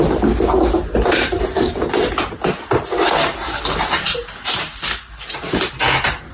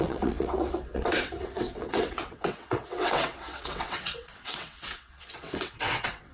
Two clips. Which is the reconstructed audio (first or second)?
second